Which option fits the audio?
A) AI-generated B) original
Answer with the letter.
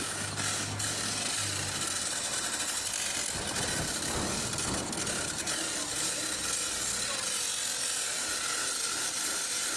B